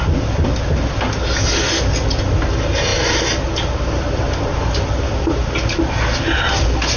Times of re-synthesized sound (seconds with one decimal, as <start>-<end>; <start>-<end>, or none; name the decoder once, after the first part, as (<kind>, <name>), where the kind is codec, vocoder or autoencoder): none